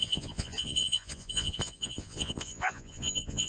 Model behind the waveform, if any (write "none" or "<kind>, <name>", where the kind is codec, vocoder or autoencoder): vocoder, Vocos